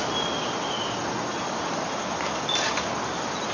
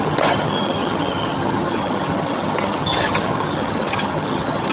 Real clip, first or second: first